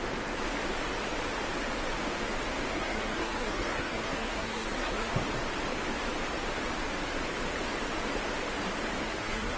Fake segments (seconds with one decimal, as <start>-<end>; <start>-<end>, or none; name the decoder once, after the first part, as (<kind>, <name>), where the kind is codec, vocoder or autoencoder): 2.7-5.1 (codec, SNAC); 9.0-9.6